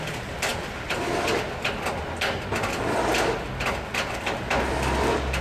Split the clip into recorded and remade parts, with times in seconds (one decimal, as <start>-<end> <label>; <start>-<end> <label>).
0.0-5.4 recorded